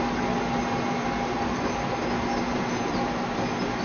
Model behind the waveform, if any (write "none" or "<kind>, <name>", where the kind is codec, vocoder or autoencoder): none